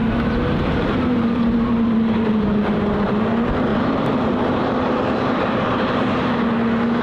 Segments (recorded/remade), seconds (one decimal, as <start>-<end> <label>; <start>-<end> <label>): 0.0-3.2 remade; 3.2-3.7 recorded; 3.7-6.3 remade; 6.3-7.0 recorded